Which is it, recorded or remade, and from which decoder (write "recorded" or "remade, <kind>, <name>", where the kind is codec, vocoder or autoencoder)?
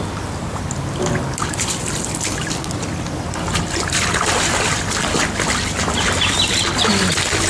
recorded